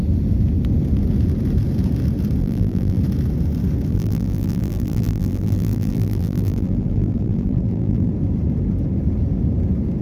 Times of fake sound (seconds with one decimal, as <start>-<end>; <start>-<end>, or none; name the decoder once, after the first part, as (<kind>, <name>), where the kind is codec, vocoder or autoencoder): 2.4-3.0 (vocoder, BigVGAN v2); 3.9-8.1